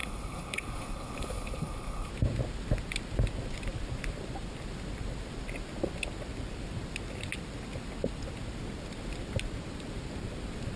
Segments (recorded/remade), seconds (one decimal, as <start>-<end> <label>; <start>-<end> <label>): 0.0-2.1 remade; 2.1-10.8 recorded